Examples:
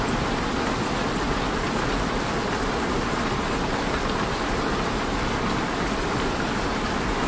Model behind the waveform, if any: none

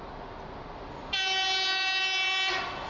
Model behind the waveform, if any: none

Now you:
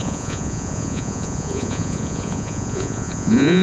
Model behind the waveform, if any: vocoder, Vocos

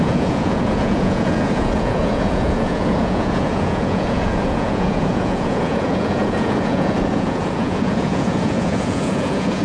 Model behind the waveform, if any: vocoder, Vocos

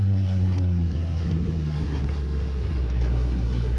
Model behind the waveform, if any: codec, SNAC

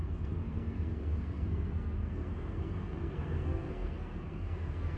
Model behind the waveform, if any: codec, SNAC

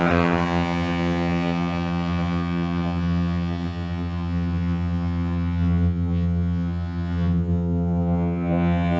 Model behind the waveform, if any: vocoder, HiFi-GAN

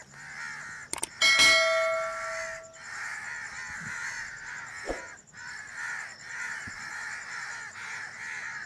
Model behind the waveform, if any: none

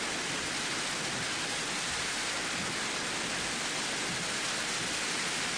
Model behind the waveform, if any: none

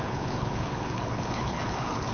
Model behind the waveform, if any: codec, HILCodec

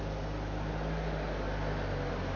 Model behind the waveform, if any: none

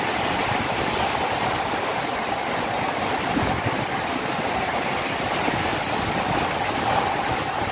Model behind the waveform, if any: none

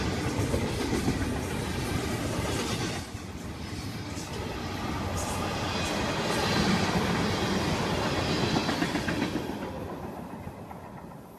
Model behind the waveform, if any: none